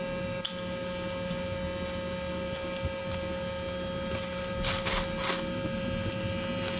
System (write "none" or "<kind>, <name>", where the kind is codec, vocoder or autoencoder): none